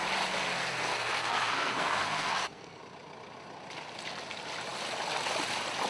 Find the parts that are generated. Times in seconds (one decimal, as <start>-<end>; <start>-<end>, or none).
0.6-2.8